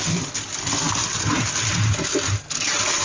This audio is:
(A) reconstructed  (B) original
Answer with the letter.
B